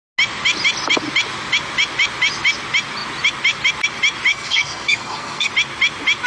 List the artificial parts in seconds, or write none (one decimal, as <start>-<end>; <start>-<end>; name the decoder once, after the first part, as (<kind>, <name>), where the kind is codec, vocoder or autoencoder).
4.3-5.5 (codec, SNAC)

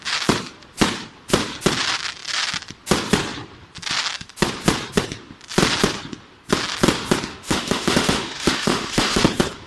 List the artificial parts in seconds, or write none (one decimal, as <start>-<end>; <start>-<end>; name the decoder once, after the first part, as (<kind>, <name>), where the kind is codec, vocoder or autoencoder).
7.3-9.2 (autoencoder, DAC-VAE)

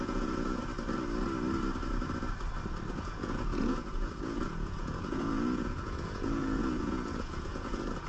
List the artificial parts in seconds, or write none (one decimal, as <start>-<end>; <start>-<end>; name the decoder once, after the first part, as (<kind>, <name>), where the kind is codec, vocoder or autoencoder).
0.0-0.6 (vocoder, Vocos); 2.9-8.1